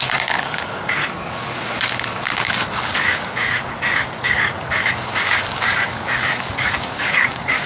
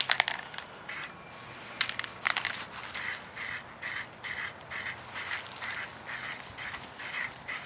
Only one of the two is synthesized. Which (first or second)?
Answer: first